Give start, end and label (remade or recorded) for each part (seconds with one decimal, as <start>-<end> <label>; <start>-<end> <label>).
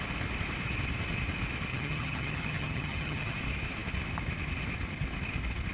0.0-1.7 recorded; 1.7-3.4 remade; 3.4-5.7 recorded